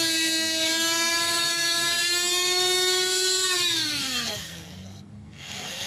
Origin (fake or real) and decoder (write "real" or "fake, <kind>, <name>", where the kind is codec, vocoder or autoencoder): fake, codec, SNAC